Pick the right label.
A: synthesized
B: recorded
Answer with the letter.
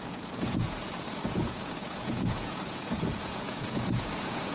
A